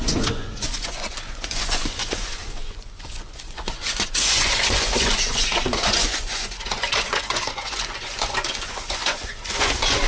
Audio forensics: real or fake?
fake